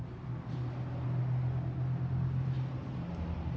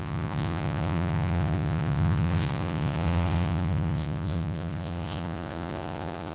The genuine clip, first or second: first